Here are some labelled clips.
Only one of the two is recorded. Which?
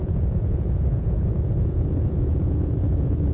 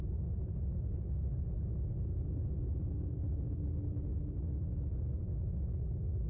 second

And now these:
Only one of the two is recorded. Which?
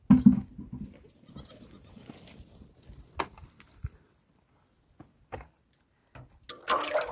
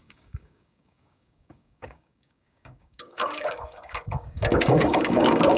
first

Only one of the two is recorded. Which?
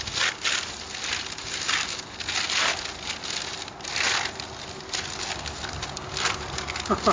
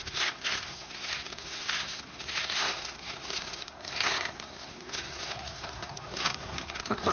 first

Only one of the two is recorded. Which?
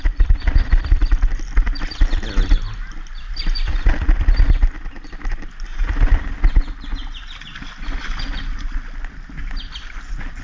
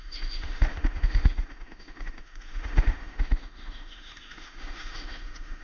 first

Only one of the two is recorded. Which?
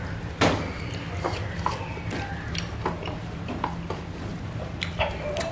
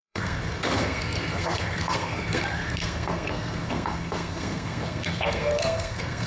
first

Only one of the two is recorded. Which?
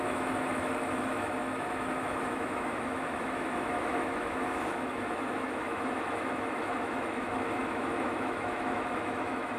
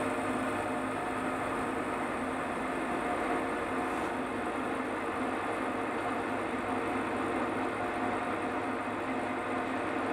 second